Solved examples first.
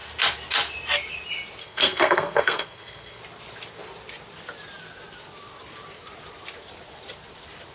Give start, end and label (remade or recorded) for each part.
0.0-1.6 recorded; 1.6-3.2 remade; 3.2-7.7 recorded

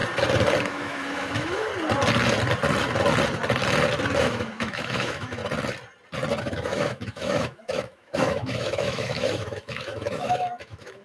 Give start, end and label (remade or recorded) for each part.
0.0-0.6 recorded; 0.6-1.7 remade; 1.7-4.2 recorded; 4.2-5.4 remade; 5.4-6.4 recorded; 6.4-11.0 remade

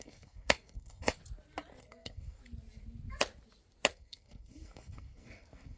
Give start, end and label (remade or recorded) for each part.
0.0-1.2 remade; 1.2-1.8 recorded; 1.8-2.4 remade; 2.4-3.9 recorded; 3.9-5.8 remade

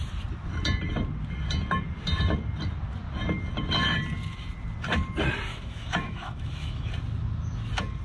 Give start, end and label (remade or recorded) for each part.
0.0-5.5 recorded; 5.5-6.9 remade; 6.9-8.0 recorded